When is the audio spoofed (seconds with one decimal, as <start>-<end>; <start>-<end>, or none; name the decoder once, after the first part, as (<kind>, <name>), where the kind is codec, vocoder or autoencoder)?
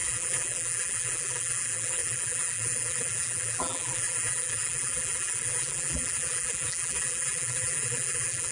0.0-8.5 (vocoder, BigVGAN v2)